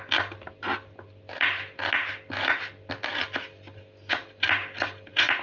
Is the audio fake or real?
real